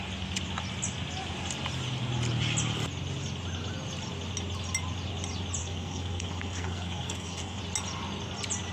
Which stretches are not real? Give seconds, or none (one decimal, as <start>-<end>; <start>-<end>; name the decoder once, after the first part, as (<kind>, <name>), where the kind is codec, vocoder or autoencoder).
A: 5.6-7.6 (codec, SNAC)